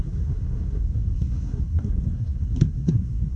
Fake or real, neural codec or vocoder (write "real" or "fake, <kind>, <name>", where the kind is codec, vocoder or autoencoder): fake, codec, SNAC